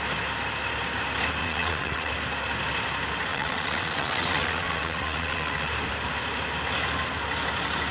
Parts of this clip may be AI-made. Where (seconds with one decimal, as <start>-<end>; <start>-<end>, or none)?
1.4-2.1; 3.3-5.7